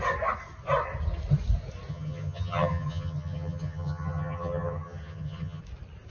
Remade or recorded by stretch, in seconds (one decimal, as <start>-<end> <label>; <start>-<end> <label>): 0.0-1.9 recorded; 1.9-5.6 remade; 5.6-6.1 recorded